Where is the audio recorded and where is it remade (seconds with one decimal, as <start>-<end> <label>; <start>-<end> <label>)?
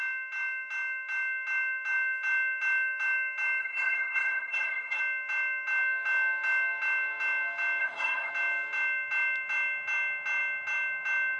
0.0-3.6 recorded; 3.6-5.0 remade; 5.0-7.8 recorded; 7.8-8.3 remade; 8.3-11.4 recorded